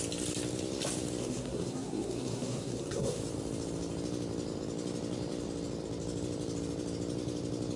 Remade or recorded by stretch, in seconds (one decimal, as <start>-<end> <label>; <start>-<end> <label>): 0.0-1.2 recorded; 1.2-3.2 remade; 3.2-7.8 recorded

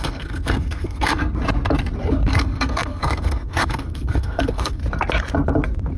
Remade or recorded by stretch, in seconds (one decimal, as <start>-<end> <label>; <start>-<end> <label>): 0.0-1.2 remade; 1.2-2.3 recorded; 2.3-4.8 remade; 4.8-6.0 recorded

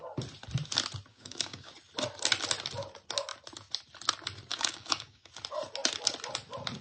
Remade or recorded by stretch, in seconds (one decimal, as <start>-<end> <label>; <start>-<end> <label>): 0.0-1.1 recorded; 1.1-1.7 remade; 1.7-4.5 recorded; 4.5-5.3 remade; 5.3-6.8 recorded

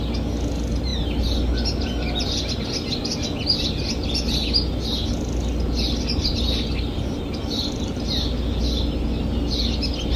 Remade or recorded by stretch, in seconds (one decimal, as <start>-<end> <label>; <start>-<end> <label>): 0.0-10.2 recorded

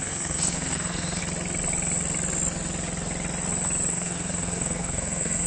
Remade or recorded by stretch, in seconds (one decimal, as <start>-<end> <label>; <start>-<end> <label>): 0.0-1.2 remade; 1.2-3.9 recorded; 3.9-5.5 remade